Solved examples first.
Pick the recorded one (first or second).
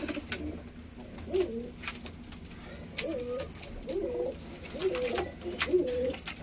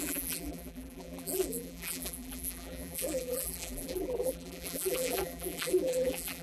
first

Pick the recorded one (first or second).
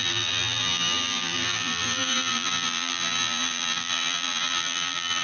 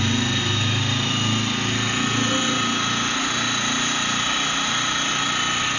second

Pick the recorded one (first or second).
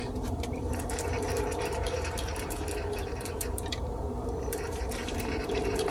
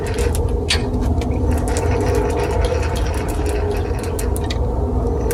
second